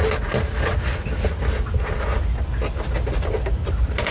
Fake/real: real